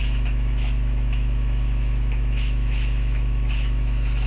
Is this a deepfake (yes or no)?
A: yes